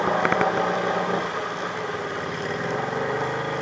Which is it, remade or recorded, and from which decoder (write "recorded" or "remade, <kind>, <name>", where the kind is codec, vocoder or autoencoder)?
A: recorded